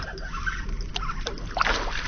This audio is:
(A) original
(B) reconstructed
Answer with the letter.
A